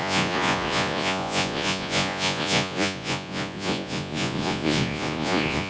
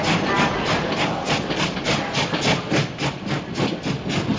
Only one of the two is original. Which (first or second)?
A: second